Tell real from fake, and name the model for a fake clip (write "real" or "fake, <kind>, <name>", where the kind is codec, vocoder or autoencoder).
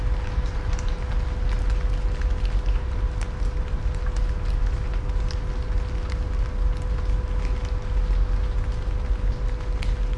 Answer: real